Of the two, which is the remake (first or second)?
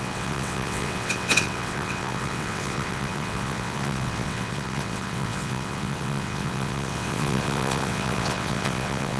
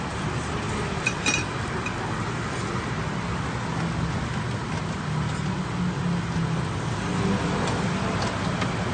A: first